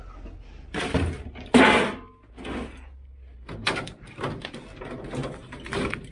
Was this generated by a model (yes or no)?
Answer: no